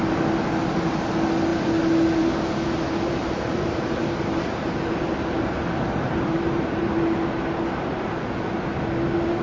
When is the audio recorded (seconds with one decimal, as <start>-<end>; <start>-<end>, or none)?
0.0-3.2; 7.0-9.4

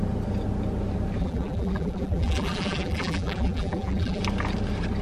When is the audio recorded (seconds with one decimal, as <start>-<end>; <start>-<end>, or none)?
0.0-1.2; 4.2-5.0

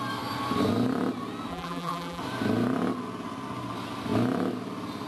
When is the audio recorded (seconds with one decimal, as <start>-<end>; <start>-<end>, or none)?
0.0-1.5; 2.2-5.1

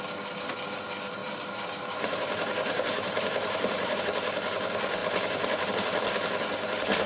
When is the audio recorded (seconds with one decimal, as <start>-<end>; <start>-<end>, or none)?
0.0-1.2; 4.0-5.0; 5.7-7.1

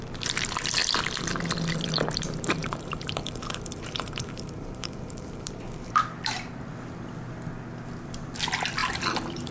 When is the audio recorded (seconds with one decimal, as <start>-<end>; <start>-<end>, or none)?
0.0-2.6; 5.6-8.8

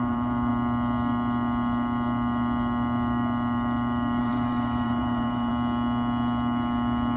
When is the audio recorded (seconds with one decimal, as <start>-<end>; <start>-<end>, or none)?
0.5-4.2; 5.5-7.2